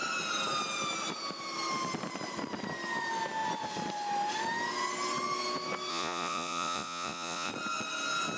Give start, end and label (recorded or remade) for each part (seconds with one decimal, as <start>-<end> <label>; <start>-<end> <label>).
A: 0.0-5.9 recorded; 5.9-7.5 remade; 7.5-8.4 recorded